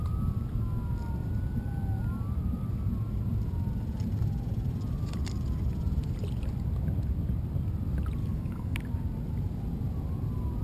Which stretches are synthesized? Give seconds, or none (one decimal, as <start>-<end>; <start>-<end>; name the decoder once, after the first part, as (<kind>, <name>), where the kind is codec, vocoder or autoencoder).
8.2-8.8 (codec, DAC)